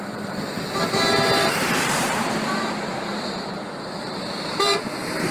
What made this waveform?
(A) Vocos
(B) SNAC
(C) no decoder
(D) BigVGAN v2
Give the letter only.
D